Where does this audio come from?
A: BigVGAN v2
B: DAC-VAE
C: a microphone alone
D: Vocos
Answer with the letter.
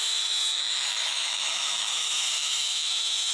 B